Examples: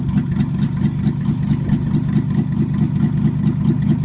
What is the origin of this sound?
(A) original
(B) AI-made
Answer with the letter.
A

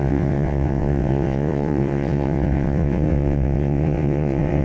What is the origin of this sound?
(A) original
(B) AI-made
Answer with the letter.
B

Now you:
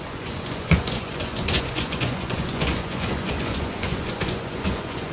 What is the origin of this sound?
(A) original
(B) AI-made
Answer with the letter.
B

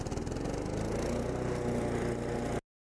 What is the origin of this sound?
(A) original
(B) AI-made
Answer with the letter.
A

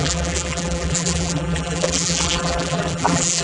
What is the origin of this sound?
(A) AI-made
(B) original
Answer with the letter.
A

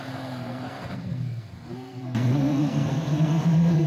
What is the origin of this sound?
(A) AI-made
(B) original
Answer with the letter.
A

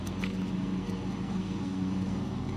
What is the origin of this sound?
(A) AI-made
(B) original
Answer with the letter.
A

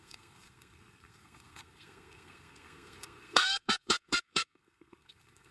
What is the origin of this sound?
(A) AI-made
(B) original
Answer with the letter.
A